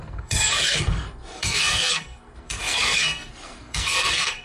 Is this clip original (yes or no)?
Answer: no